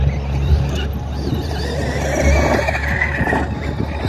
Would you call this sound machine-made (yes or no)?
yes